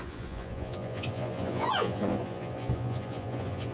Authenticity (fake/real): fake